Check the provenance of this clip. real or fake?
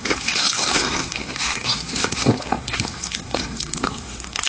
fake